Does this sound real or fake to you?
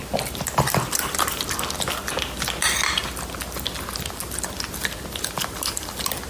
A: real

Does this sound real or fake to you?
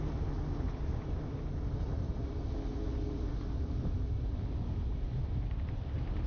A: real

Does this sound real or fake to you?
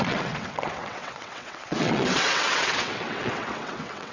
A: fake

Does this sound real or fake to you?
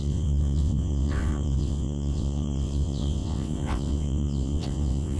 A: fake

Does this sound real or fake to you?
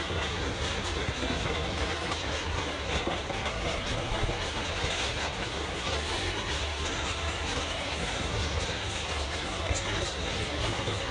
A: fake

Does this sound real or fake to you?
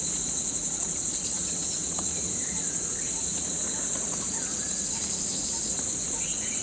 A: fake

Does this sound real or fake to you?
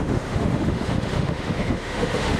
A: fake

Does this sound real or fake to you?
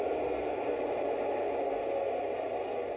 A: real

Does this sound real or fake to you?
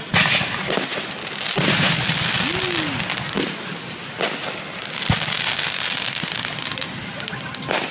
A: real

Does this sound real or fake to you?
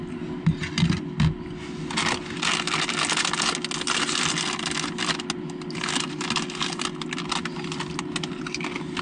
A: real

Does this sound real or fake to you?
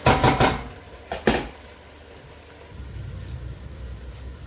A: real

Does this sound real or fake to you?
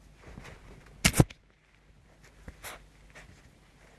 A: real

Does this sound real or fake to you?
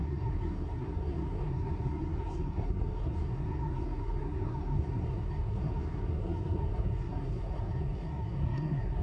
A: fake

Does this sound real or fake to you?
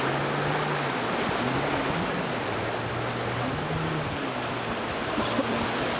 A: real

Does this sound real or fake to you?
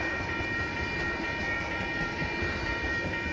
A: fake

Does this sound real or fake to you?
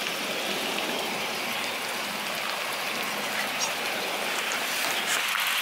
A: real